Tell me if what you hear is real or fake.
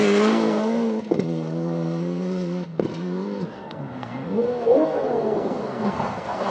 fake